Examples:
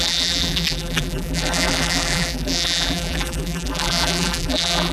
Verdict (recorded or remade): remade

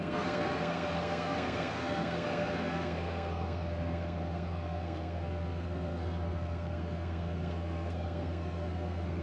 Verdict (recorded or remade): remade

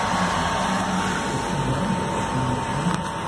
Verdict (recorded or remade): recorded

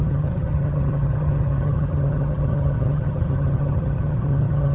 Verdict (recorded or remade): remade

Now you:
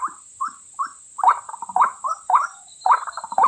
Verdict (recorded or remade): remade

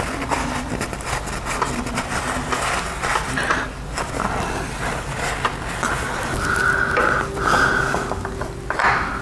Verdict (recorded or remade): recorded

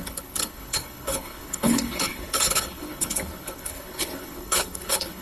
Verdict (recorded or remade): remade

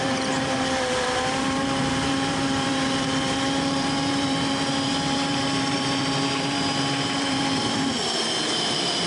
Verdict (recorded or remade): remade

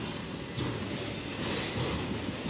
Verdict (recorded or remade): recorded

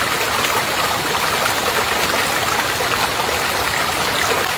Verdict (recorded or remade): recorded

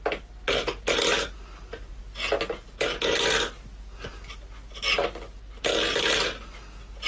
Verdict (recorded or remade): recorded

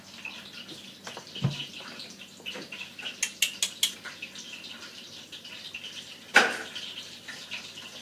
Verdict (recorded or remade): recorded